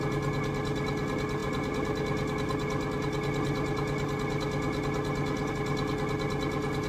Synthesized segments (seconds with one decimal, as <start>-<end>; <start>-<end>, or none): none